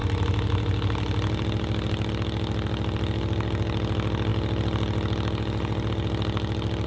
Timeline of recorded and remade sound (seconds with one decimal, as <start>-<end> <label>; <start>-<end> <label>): 0.0-6.9 recorded